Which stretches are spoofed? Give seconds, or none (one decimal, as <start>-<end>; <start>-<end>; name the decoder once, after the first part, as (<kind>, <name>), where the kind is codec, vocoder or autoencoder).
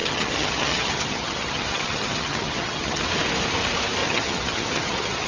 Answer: 0.0-3.0 (vocoder, HiFi-GAN); 4.0-5.3